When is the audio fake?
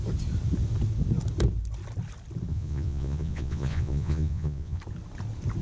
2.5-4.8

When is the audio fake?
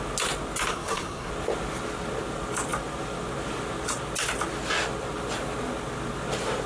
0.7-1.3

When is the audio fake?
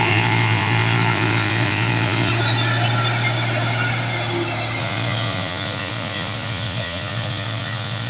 0.0-2.3; 4.8-8.1